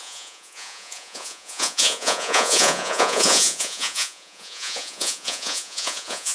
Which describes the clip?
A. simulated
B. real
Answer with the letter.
A